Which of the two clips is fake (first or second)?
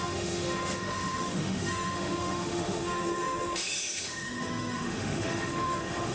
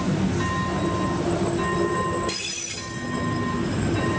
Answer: first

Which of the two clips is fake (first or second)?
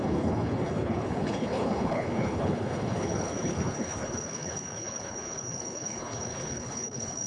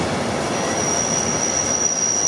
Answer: first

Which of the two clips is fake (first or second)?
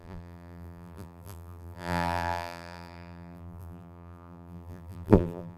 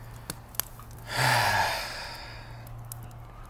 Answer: first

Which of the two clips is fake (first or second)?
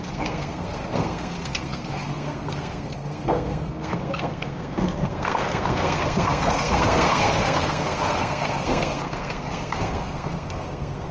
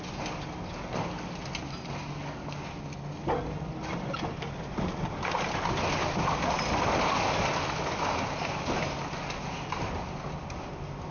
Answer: first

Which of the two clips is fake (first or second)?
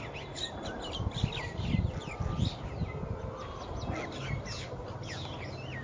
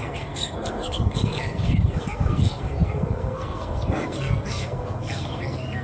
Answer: second